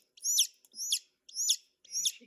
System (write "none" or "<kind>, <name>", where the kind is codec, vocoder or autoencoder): none